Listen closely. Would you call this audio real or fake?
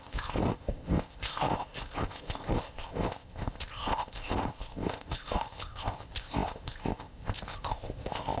fake